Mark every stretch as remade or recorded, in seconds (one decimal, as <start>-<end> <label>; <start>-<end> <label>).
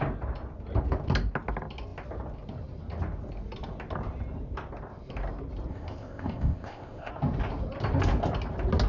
0.0-5.7 recorded; 5.7-7.1 remade; 7.1-8.9 recorded